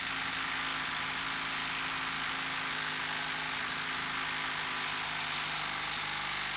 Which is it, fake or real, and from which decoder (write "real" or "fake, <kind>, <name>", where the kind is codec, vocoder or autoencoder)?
real